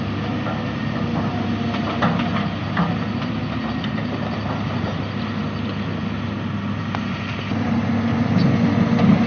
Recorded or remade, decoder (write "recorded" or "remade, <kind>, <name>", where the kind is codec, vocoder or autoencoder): recorded